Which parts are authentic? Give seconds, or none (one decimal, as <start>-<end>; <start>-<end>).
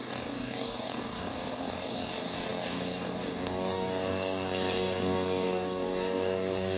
none